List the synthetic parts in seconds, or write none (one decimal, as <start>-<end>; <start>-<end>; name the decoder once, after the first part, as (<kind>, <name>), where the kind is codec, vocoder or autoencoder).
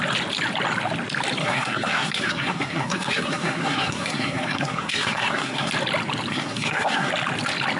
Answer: 1.4-5.7 (codec, SNAC); 6.3-7.1